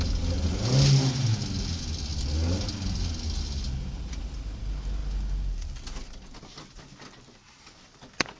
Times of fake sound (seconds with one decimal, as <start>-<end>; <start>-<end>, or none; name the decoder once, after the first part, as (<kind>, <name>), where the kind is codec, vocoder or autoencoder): none